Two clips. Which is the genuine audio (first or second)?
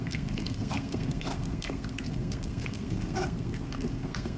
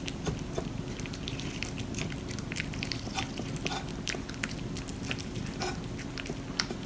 second